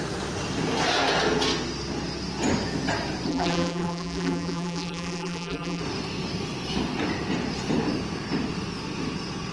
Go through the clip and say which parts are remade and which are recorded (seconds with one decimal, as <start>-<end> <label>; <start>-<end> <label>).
0.0-3.3 recorded; 3.3-5.8 remade; 5.8-9.5 recorded

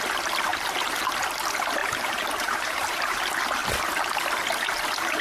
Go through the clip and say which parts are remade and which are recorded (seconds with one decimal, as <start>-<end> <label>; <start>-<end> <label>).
0.0-1.8 recorded; 1.8-3.2 remade; 3.2-5.2 recorded

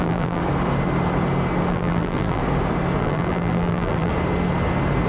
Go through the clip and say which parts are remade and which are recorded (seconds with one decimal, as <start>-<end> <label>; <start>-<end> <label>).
0.0-0.4 remade; 0.4-1.7 recorded; 1.7-2.4 remade; 2.4-3.0 recorded; 3.0-4.1 remade; 4.1-5.1 recorded

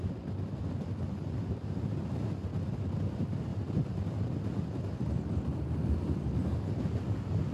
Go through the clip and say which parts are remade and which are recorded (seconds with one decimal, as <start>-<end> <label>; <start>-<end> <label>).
0.0-7.5 recorded

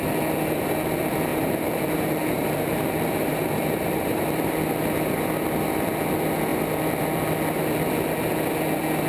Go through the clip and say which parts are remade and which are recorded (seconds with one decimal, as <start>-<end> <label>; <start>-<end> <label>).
0.0-1.3 recorded; 1.3-4.5 remade; 4.5-9.1 recorded

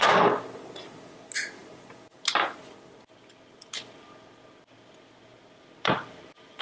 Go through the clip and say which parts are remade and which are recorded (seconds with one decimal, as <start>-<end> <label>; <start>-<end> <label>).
0.0-5.3 recorded; 5.3-6.6 remade

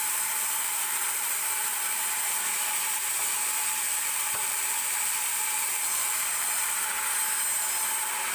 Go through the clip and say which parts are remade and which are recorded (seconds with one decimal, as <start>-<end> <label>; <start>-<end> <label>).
0.0-2.4 remade; 2.4-3.6 recorded; 3.6-6.8 remade; 6.8-8.3 recorded

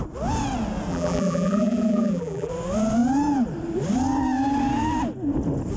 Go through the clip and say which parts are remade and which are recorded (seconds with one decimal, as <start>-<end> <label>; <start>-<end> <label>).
0.0-0.9 recorded; 0.9-2.5 remade; 2.5-5.8 recorded